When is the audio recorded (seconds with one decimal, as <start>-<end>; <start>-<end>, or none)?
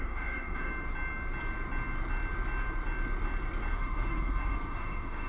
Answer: 0.7-3.7